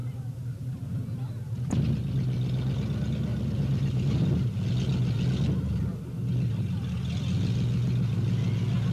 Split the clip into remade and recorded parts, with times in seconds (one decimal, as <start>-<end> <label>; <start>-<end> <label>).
0.0-3.3 recorded; 3.3-4.2 remade; 4.2-8.9 recorded